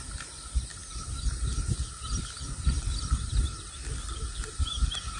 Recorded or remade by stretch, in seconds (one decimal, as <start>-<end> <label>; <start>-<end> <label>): 0.0-5.2 recorded